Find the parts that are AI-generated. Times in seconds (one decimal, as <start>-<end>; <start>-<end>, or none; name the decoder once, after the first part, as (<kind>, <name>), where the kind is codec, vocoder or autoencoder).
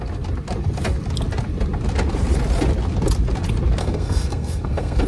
3.8-5.1 (codec, SNAC)